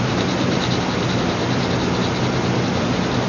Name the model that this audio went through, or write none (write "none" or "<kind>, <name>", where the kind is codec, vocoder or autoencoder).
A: none